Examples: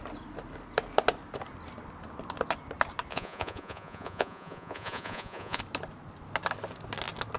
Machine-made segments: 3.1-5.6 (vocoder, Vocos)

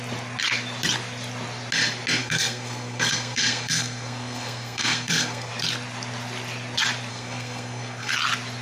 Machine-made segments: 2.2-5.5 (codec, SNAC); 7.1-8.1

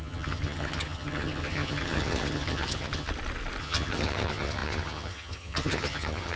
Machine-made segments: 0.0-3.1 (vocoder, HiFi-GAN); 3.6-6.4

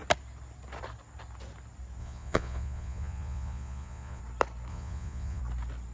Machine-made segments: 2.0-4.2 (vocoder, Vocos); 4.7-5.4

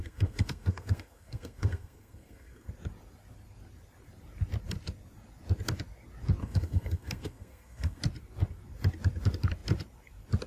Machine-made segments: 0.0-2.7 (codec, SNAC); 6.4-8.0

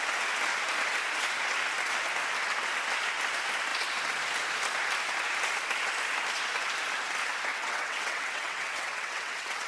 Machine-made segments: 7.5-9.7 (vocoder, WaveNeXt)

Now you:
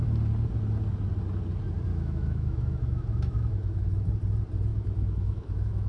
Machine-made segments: 1.9-4.1 (autoencoder, DAC-VAE); 4.7-5.9